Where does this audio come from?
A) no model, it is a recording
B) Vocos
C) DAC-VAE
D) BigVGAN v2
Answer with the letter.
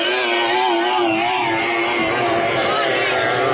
A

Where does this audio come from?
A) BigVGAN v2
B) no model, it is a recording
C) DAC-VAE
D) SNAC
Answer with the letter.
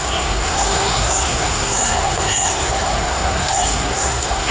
D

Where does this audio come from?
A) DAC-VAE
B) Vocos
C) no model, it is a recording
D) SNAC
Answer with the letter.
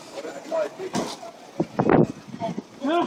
C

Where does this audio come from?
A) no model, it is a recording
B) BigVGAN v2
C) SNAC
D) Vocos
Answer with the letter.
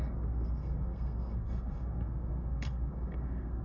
C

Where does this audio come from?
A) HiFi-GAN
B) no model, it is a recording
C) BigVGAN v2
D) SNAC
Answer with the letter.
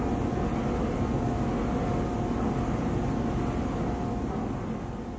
B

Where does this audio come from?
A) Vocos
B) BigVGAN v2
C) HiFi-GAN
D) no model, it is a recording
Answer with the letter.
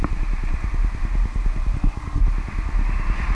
D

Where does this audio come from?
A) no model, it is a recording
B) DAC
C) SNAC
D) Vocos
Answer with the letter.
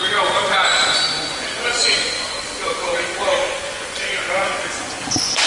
D